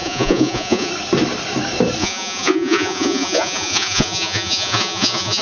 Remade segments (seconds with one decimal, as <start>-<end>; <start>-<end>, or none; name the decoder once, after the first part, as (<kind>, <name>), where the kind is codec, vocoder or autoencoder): 0.0-0.9 (vocoder, Vocos); 2.0-5.4